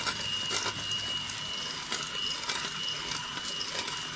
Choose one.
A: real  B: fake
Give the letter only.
A